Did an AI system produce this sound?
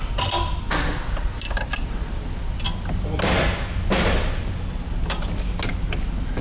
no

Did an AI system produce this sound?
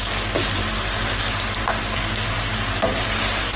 no